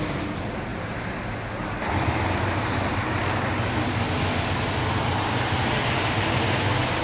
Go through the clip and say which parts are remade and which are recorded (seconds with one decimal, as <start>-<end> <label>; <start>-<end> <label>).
0.0-0.7 recorded; 0.7-3.2 remade; 3.2-7.0 recorded